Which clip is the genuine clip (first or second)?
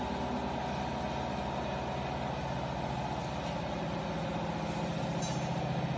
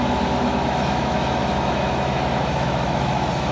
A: first